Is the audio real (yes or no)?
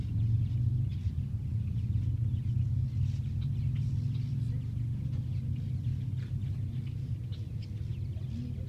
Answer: yes